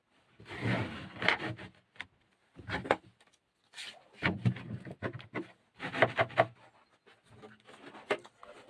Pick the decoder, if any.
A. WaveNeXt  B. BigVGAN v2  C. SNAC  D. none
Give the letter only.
D